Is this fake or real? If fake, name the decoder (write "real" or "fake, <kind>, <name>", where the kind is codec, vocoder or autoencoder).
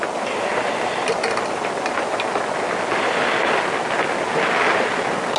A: real